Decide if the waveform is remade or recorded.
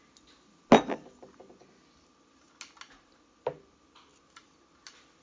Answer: recorded